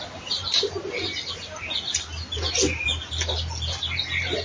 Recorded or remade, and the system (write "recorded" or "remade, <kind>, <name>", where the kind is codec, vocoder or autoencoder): recorded